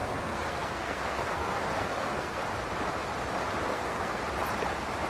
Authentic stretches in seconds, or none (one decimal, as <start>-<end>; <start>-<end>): 2.4-3.7; 4.2-5.1